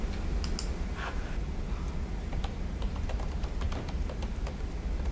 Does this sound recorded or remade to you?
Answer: recorded